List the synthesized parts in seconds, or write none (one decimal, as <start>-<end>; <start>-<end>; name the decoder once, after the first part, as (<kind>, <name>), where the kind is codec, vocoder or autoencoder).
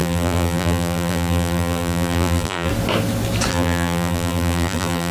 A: 0.0-2.7 (vocoder, BigVGAN v2); 3.5-5.1